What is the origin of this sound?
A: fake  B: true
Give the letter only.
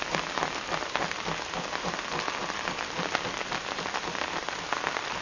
B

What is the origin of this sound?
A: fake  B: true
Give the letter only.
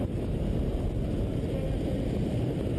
B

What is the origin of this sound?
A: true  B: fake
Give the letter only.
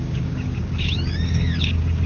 B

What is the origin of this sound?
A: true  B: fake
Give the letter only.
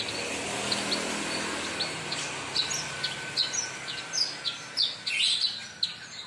A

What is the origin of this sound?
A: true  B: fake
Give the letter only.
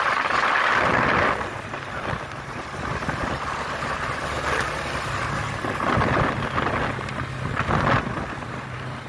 A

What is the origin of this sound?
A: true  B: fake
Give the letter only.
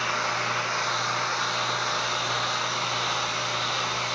A